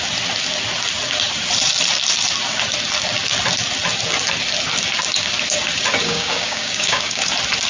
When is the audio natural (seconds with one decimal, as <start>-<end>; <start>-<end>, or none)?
0.0-6.0; 7.2-7.7